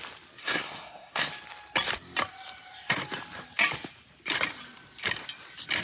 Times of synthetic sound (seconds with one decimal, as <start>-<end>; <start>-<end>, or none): 0.4-1.3